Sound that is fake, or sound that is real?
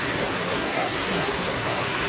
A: fake